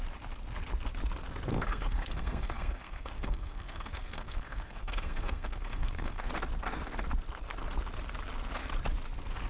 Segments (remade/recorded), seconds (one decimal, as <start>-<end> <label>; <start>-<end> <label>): 0.0-1.5 recorded; 1.5-6.3 remade; 6.3-9.5 recorded